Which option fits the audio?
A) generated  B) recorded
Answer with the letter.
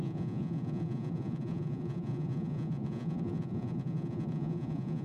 A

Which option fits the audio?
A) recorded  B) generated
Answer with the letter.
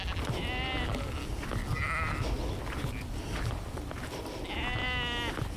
A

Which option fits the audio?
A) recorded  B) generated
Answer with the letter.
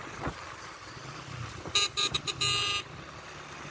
A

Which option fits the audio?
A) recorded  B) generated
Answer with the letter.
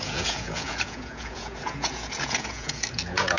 B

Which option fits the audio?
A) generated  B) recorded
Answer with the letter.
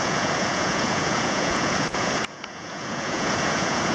A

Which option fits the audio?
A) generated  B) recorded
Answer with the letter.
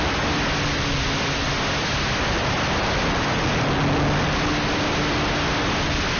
B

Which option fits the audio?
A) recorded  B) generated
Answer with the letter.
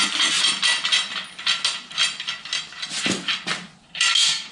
A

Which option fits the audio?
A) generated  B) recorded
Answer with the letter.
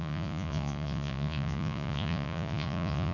A